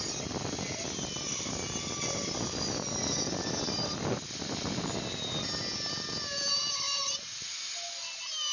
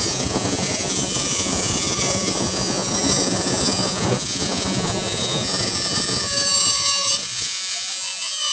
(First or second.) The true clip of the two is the first